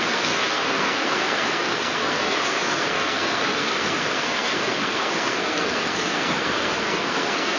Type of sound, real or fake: fake